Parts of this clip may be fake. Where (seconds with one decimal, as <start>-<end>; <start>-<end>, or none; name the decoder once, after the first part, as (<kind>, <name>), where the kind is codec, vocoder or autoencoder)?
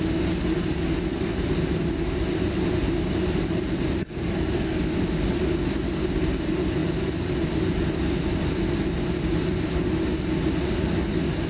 4.0-4.8 (codec, SNAC)